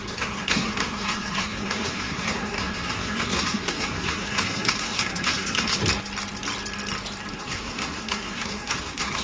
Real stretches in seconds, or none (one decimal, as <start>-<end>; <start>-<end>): 5.8-7.3